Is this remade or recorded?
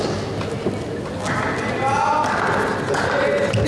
recorded